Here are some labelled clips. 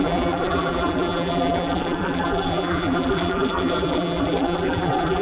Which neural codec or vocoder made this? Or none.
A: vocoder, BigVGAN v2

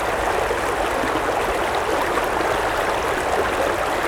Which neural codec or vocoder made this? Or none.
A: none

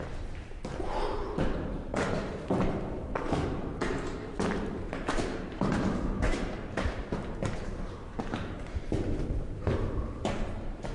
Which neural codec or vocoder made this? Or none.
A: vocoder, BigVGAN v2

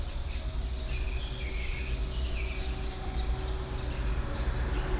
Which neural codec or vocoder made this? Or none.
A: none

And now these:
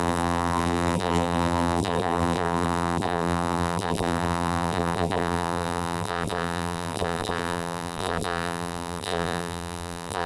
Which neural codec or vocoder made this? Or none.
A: vocoder, BigVGAN v2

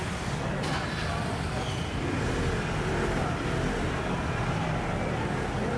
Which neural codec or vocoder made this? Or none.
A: none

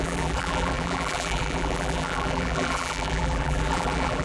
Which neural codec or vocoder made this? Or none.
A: vocoder, BigVGAN v2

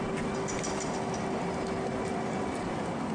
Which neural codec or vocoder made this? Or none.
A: none